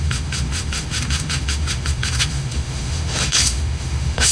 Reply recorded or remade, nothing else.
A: remade